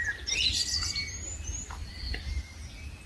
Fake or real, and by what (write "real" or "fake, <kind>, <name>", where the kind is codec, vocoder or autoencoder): real